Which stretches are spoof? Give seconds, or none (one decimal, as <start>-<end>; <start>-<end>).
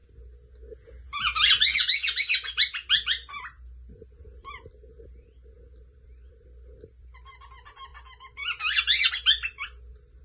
3.3-7.9; 9.1-10.2